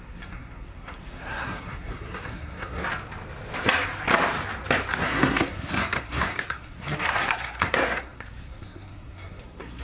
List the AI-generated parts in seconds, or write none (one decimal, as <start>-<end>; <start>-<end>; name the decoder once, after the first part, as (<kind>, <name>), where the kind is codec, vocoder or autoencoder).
0.0-2.8 (codec, SNAC); 5.0-9.8